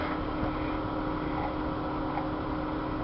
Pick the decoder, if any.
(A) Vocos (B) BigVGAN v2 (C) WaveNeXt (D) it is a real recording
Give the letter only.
D